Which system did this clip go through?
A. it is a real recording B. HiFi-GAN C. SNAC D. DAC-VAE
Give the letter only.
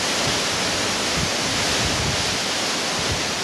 A